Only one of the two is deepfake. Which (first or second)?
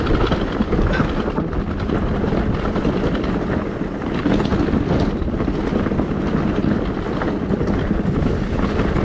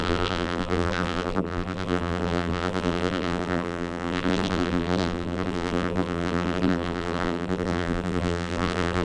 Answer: second